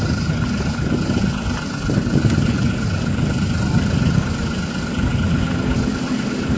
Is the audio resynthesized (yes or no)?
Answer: no